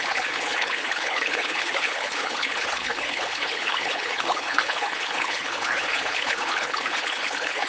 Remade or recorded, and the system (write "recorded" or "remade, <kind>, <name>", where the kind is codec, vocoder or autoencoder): remade, codec, HILCodec